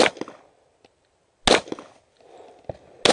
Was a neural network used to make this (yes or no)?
no